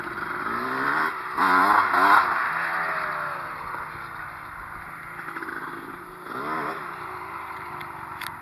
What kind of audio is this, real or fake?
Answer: real